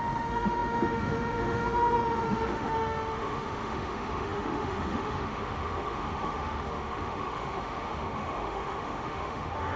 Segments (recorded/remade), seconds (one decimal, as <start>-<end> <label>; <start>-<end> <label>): 0.0-9.8 remade